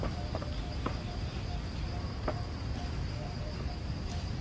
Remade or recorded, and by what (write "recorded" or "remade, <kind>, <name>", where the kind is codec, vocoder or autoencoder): recorded